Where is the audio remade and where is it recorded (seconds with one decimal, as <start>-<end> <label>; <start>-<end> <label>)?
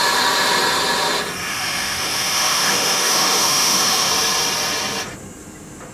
0.0-1.5 recorded; 1.5-4.1 remade; 4.1-5.9 recorded